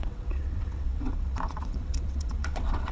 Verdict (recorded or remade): remade